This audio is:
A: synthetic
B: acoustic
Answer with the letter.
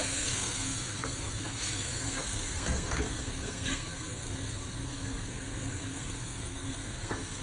A